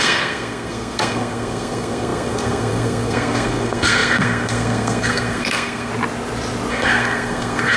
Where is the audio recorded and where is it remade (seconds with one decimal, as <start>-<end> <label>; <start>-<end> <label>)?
0.0-5.9 remade; 5.9-6.7 recorded; 6.7-7.8 remade